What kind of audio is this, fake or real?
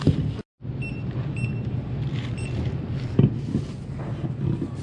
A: real